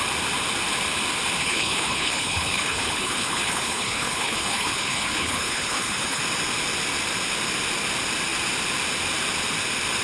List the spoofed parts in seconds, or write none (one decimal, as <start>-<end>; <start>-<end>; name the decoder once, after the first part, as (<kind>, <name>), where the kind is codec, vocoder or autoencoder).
1.4-6.2 (codec, HILCodec)